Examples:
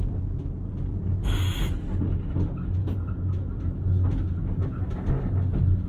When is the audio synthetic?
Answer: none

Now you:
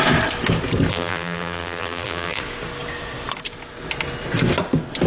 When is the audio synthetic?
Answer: 0.9-2.4 (vocoder, BigVGAN v2)

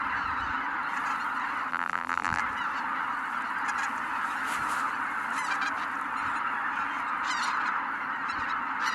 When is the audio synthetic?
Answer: 1.7-2.4 (vocoder, BigVGAN v2)

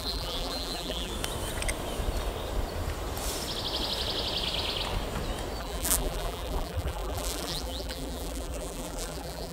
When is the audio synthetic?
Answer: 0.0-1.1 (vocoder, BigVGAN v2); 5.6-9.5